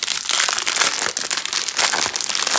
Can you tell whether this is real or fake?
real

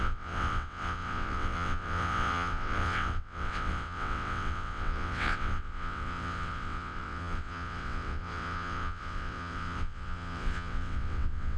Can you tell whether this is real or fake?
fake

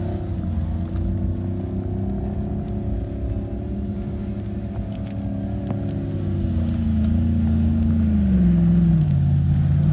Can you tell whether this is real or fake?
real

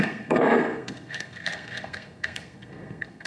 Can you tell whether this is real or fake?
fake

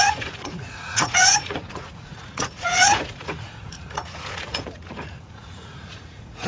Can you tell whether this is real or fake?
fake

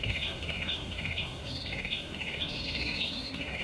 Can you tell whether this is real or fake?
fake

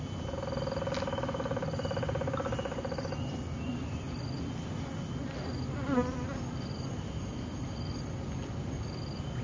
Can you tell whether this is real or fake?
real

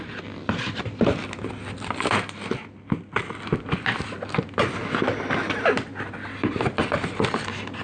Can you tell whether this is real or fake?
real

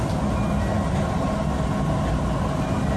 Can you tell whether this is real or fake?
real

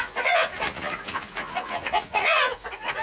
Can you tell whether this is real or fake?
fake